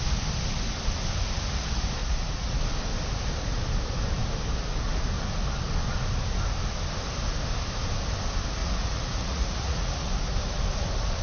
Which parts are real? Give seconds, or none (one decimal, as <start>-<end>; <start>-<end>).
0.0-2.0; 2.6-8.6; 10.1-11.2